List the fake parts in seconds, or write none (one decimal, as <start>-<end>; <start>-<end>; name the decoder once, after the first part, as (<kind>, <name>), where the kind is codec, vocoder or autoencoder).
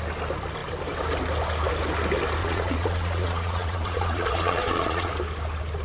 2.4-5.1 (vocoder, Vocos)